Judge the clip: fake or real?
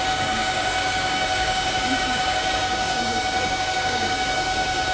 fake